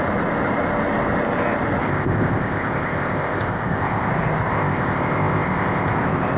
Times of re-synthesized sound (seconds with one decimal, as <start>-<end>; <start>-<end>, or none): 1.8-4.1; 4.5-6.4